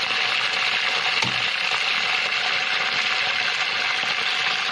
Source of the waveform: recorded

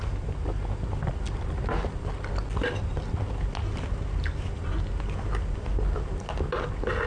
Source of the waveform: recorded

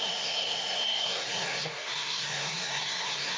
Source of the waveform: remade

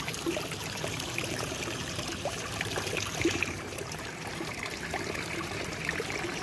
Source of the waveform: remade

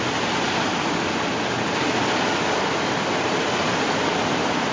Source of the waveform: recorded